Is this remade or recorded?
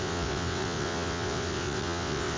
remade